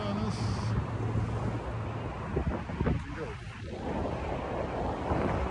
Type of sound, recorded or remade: recorded